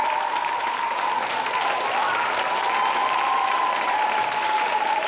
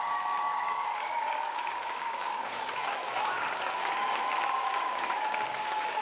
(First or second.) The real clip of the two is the first